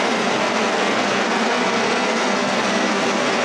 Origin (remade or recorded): remade